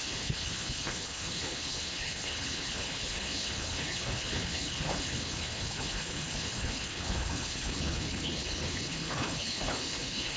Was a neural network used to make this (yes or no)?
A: yes